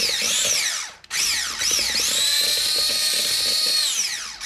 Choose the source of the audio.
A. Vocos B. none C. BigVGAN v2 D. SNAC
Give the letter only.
C